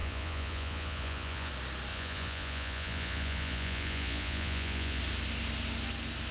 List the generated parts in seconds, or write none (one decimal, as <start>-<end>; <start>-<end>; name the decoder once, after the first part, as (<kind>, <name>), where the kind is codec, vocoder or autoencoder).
0.0-1.5 (vocoder, Vocos); 1.9-5.0